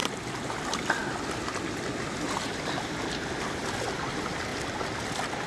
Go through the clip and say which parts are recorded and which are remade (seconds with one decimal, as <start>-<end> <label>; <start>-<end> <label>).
0.0-5.5 recorded